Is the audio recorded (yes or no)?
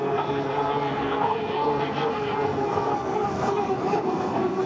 no